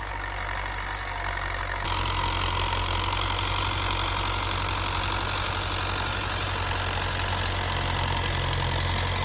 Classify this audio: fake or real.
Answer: real